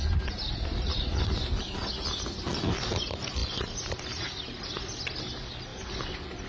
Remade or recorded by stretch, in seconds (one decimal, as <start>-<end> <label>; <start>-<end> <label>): 0.0-6.5 recorded